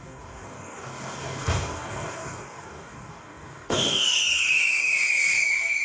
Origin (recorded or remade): remade